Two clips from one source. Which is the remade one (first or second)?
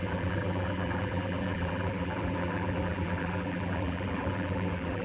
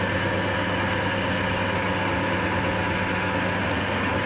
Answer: first